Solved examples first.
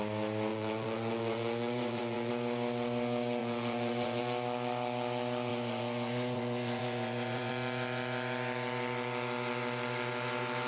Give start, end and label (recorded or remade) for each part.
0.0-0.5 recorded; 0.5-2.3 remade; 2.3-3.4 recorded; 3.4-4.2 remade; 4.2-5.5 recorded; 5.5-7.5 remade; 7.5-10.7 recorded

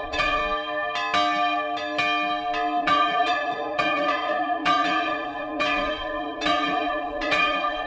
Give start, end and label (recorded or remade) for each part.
0.0-0.4 remade; 0.4-2.8 recorded; 2.8-7.9 remade

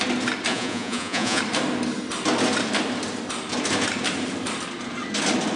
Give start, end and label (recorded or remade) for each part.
0.0-0.5 recorded; 0.5-1.4 remade; 1.4-5.6 recorded

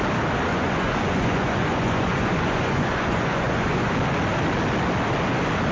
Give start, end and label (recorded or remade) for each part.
0.0-0.5 recorded; 0.5-3.9 remade; 3.9-5.7 recorded

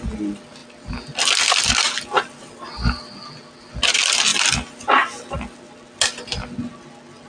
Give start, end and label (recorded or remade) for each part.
0.0-7.3 recorded

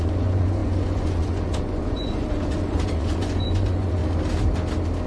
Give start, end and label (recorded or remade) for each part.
0.0-4.0 remade; 4.0-5.1 recorded